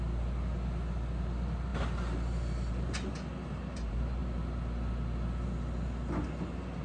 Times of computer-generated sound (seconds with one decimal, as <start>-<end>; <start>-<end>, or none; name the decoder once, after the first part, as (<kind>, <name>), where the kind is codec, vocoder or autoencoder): none